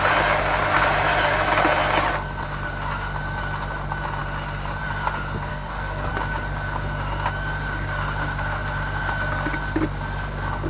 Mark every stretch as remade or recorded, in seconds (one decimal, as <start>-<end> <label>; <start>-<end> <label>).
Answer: 0.0-5.5 recorded; 5.5-6.1 remade; 6.1-10.7 recorded